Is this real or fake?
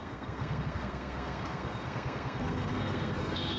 fake